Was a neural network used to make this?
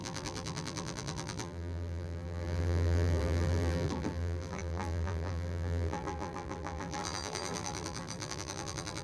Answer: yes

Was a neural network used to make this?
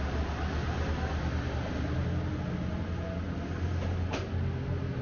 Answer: no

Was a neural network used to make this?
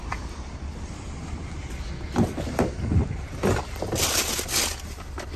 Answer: yes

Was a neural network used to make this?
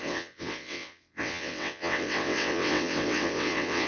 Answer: yes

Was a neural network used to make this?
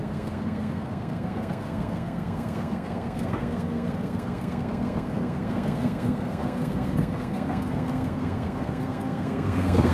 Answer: yes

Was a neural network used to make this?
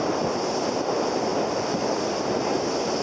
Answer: no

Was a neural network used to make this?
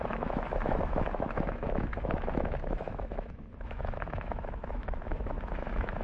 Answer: yes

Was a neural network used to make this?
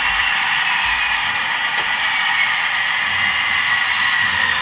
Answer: yes